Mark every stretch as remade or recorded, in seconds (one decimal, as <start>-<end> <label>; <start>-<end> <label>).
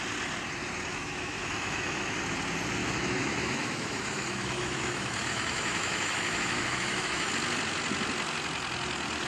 0.0-0.9 recorded; 0.9-2.2 remade; 2.2-2.8 recorded; 2.8-7.3 remade; 7.3-9.3 recorded